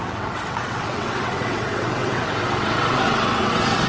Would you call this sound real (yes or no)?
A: no